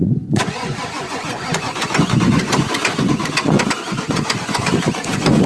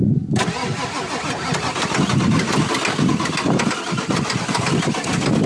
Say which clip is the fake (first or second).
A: first